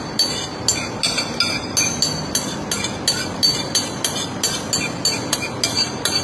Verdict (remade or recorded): recorded